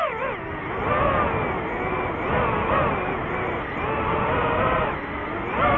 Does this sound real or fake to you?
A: real